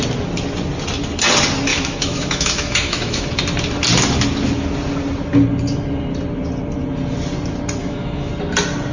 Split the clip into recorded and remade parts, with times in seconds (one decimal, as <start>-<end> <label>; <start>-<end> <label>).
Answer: 0.0-1.7 recorded; 1.7-3.3 remade; 3.3-7.8 recorded; 7.8-8.3 remade; 8.3-8.9 recorded